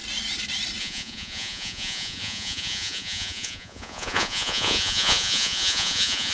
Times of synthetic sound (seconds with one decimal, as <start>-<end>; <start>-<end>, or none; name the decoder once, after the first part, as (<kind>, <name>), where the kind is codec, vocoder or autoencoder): 0.8-6.3 (vocoder, Vocos)

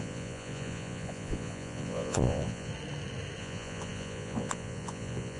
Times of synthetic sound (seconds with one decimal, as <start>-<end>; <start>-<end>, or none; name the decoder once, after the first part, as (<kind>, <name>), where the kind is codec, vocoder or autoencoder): 0.0-2.7 (vocoder, Vocos); 3.4-5.4